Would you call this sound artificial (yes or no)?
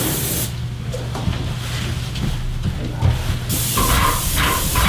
no